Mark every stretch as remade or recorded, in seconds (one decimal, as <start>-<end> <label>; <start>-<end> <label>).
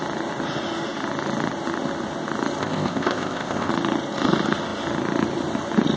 0.0-2.6 recorded; 2.6-3.7 remade; 3.7-6.0 recorded